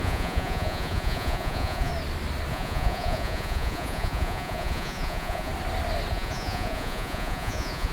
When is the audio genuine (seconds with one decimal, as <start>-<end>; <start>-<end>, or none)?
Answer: 1.9-2.5; 5.5-6.1